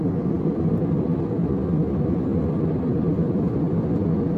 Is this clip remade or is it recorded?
recorded